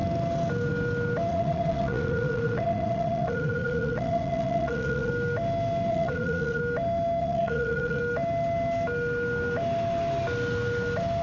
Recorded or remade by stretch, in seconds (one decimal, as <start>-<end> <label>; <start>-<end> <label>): 0.0-1.3 recorded; 1.3-5.1 remade; 5.1-5.9 recorded; 5.9-6.6 remade; 6.6-7.2 recorded; 7.2-8.0 remade; 8.0-11.2 recorded